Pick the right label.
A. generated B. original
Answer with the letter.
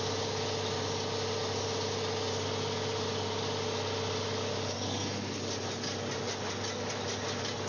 B